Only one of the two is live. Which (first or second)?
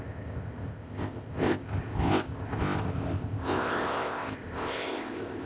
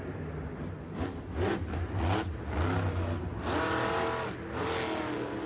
second